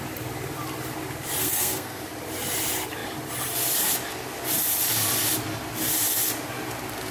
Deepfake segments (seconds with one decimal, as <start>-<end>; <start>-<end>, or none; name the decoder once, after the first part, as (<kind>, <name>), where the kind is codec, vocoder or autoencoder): 1.4-2.0 (codec, SNAC)